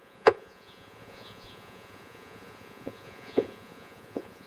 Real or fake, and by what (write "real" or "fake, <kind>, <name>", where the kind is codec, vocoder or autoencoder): fake, vocoder, Vocos